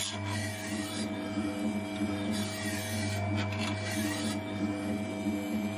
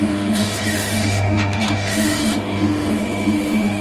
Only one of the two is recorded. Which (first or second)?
first